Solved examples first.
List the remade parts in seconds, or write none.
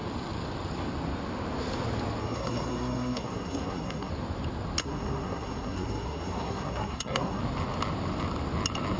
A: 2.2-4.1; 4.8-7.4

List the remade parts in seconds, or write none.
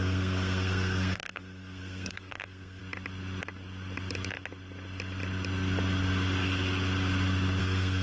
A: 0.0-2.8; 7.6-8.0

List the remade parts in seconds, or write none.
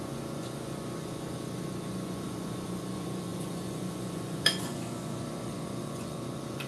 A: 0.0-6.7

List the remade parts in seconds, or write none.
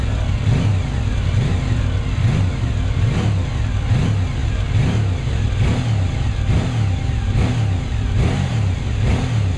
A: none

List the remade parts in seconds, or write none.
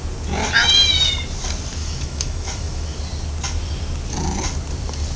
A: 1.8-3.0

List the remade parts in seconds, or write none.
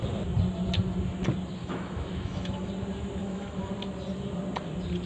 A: 1.6-2.7; 3.2-3.7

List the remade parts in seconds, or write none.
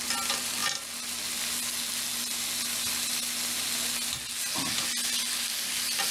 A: none